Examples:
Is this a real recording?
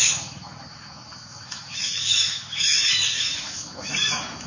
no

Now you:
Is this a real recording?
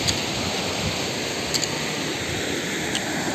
yes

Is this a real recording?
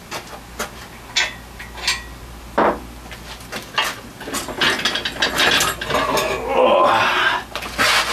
yes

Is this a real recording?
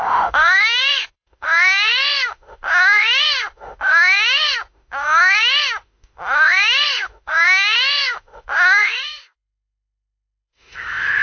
no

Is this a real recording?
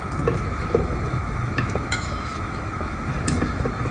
no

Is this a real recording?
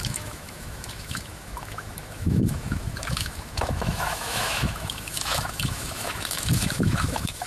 no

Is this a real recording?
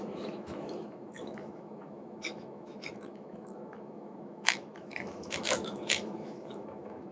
no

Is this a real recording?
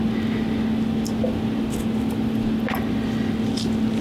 yes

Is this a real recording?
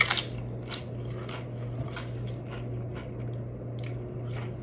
yes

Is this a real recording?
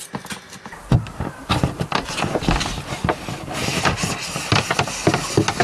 yes